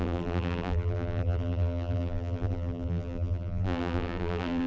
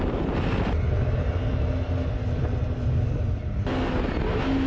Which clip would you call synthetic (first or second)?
first